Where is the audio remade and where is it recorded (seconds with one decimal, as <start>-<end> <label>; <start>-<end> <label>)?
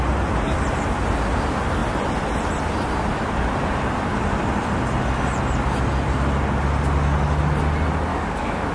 0.0-8.1 recorded; 8.1-8.7 remade